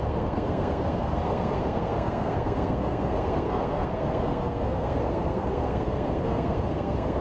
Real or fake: fake